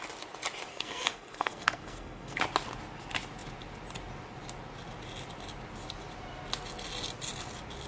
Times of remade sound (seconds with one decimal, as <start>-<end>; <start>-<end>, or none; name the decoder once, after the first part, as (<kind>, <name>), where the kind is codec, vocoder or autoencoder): 0.7-2.4 (codec, SNAC)